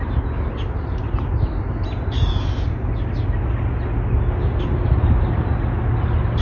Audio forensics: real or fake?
real